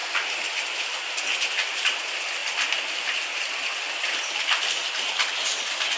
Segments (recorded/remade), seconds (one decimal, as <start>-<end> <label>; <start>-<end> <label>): 0.0-6.0 recorded